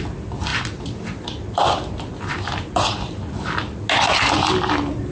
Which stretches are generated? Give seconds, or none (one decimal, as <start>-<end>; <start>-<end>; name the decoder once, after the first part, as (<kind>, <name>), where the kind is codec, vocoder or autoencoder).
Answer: 0.5-2.3 (vocoder, BigVGAN v2)